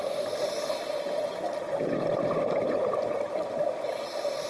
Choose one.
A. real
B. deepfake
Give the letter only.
A